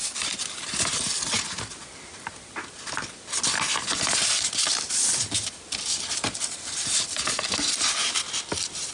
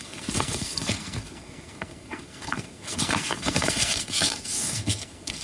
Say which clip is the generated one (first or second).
second